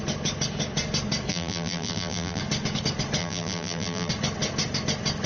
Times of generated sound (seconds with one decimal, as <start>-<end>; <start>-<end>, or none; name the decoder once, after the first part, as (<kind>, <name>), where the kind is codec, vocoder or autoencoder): 1.3-2.4 (vocoder, BigVGAN v2); 3.2-4.1